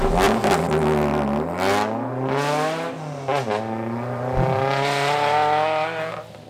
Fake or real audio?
real